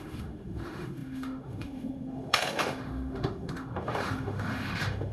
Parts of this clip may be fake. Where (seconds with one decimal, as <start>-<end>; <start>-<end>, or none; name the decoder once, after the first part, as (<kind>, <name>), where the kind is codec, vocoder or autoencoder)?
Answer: 0.0-5.1 (autoencoder, DAC-VAE)